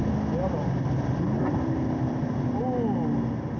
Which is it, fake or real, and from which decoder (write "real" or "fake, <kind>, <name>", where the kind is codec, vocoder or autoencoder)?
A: real